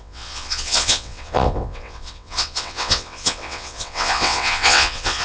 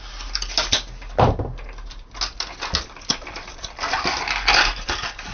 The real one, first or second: second